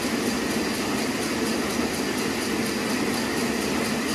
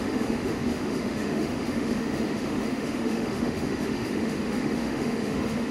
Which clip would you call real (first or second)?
first